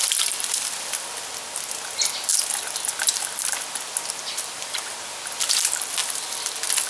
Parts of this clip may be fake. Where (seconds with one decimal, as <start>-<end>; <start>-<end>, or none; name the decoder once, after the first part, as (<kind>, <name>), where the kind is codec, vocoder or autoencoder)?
none